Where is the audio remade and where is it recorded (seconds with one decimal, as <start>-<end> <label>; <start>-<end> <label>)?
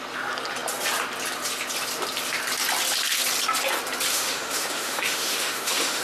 0.0-4.1 recorded; 4.1-6.0 remade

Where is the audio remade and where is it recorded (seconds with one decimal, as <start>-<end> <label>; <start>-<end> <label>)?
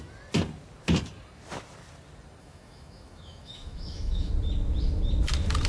0.0-2.4 recorded; 2.4-4.3 remade; 4.3-5.7 recorded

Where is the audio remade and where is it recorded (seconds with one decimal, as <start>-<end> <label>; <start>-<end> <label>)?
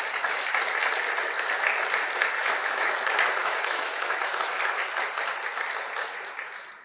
0.0-2.4 recorded; 2.4-2.9 remade; 2.9-3.4 recorded; 3.4-4.6 remade; 4.6-6.8 recorded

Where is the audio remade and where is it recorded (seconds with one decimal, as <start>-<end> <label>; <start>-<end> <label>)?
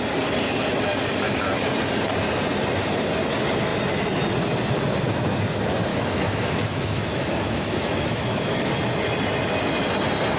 0.0-5.9 recorded; 5.9-8.7 remade; 8.7-10.4 recorded